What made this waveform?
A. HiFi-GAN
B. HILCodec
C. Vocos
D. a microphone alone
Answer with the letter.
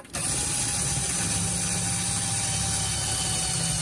D